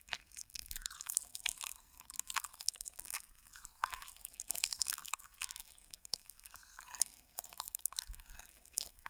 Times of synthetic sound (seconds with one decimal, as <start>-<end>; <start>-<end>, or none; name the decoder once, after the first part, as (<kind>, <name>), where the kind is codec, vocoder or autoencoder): 0.0-9.1 (codec, SNAC)